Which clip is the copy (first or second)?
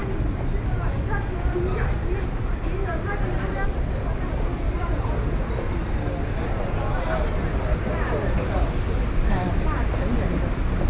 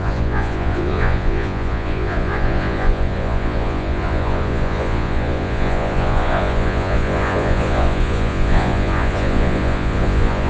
second